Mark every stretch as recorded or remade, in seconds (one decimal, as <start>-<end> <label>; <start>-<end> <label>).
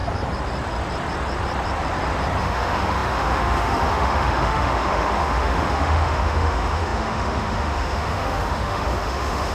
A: 0.0-2.4 recorded; 2.4-9.5 remade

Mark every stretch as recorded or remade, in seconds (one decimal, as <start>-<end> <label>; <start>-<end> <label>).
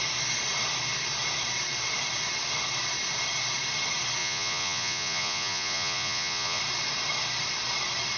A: 0.0-4.2 recorded; 4.2-6.6 remade; 6.6-8.2 recorded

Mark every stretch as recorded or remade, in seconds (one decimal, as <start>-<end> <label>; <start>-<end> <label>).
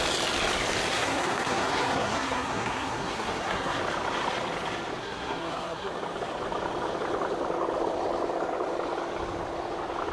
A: 0.0-0.9 recorded; 0.9-3.8 remade; 3.8-5.0 recorded; 5.0-5.9 remade; 5.9-10.1 recorded